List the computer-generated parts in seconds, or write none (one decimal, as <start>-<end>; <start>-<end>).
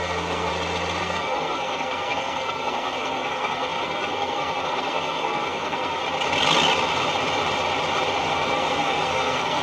0.0-0.5; 1.0-6.0; 8.2-9.6